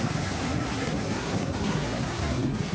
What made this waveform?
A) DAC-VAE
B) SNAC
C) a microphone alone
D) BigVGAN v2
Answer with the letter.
B